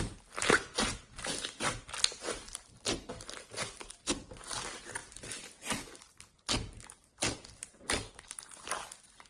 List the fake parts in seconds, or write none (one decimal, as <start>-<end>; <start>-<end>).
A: none